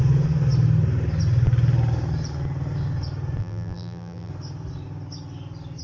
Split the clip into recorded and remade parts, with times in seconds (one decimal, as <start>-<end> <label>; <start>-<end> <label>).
0.0-3.4 recorded; 3.4-4.3 remade; 4.3-5.8 recorded